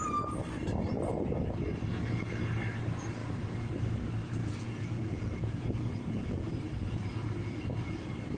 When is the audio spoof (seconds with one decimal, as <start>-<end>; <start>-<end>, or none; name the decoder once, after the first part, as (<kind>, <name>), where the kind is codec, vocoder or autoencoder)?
4.4-6.5 (vocoder, Vocos)